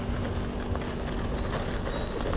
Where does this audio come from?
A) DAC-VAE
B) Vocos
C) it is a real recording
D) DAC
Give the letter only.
C